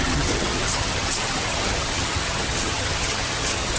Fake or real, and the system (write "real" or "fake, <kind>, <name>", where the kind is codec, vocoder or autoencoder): fake, vocoder, HiFi-GAN